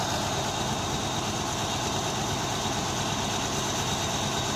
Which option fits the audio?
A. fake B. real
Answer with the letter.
B